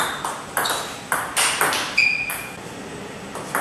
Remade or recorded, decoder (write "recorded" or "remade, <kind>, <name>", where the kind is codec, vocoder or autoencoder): recorded